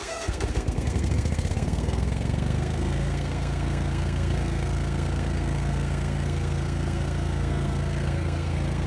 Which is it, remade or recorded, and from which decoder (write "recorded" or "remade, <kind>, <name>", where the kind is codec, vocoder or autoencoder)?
remade, codec, SNAC